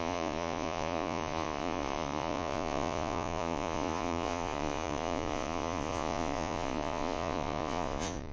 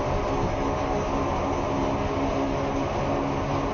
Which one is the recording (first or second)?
second